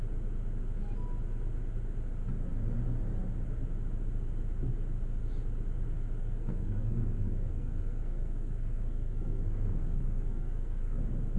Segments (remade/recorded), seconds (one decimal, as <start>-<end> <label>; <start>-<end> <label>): 0.0-6.2 recorded; 6.2-11.0 remade; 11.0-11.4 recorded